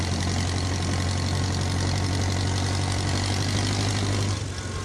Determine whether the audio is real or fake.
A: real